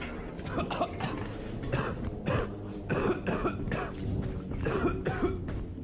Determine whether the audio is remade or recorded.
recorded